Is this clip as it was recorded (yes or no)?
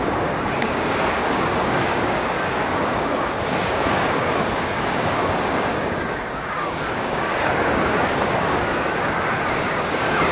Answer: no